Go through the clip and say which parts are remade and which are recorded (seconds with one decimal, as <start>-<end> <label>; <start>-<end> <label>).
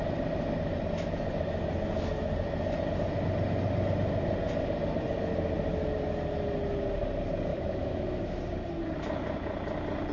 0.0-7.5 recorded; 7.5-8.4 remade; 8.4-10.1 recorded